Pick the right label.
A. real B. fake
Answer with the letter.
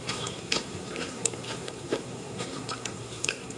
B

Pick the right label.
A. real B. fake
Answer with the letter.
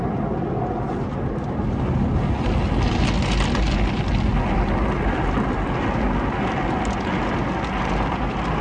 A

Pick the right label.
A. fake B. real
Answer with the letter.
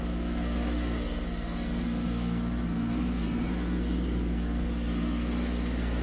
A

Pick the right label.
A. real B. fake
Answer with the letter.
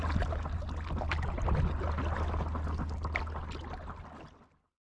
A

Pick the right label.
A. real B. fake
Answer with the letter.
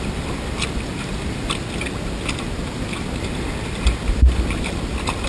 A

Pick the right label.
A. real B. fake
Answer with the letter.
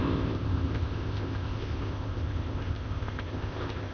B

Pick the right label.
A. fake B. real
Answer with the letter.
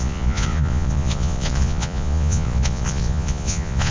A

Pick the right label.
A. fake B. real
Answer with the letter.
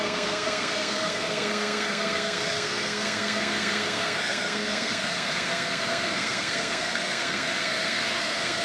A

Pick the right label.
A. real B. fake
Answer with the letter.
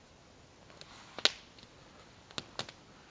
A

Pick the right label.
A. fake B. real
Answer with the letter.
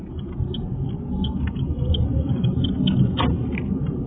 B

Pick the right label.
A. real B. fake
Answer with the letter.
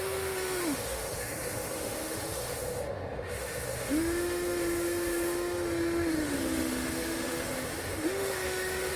B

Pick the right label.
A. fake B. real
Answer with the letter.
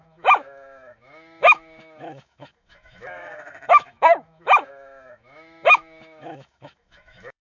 A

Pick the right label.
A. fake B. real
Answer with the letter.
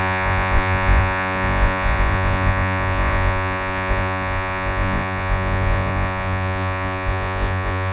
A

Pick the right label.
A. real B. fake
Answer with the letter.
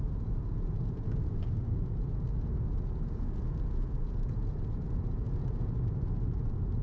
B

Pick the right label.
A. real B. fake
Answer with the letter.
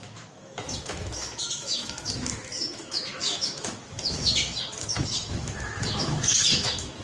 B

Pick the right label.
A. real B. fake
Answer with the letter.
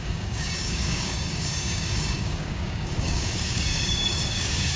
B